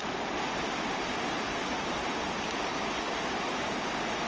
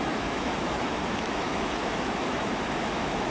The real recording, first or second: first